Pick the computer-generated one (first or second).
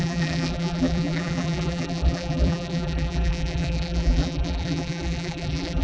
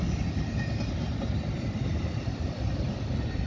first